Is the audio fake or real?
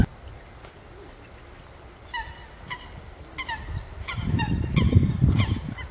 real